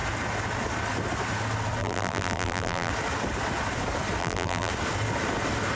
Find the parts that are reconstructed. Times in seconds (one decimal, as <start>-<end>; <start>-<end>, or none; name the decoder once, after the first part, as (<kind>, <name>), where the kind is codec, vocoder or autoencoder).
1.8-2.9 (vocoder, BigVGAN v2); 4.2-4.7